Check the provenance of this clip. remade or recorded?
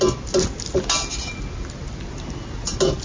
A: recorded